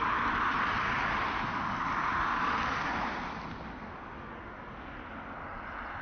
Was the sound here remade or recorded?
recorded